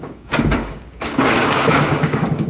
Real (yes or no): no